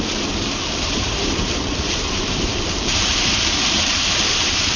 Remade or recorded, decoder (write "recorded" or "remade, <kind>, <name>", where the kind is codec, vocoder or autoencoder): remade, vocoder, BigVGAN v2